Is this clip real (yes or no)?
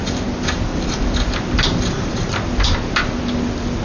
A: yes